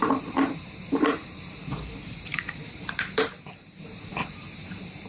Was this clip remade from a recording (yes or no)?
yes